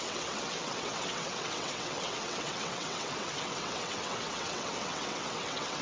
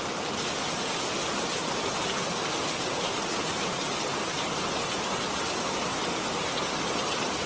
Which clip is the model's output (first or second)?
first